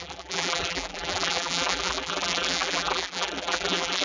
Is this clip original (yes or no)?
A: no